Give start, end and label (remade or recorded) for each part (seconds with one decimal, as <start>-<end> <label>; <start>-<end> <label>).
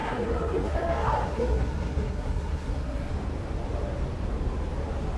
0.0-3.1 remade; 3.1-5.2 recorded